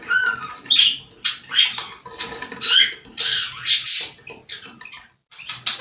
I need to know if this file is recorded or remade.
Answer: recorded